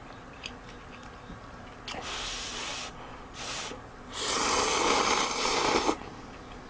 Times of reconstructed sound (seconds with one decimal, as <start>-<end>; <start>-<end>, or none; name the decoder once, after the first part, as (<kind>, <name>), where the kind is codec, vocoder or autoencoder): none